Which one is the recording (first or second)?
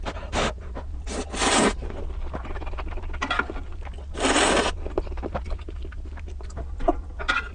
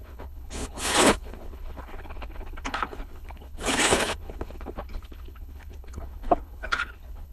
first